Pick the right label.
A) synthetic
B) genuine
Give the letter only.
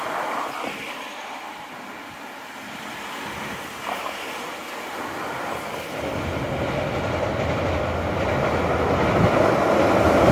B